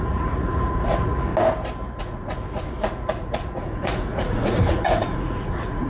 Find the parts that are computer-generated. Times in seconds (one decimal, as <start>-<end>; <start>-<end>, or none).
0.0-1.3; 2.0-5.9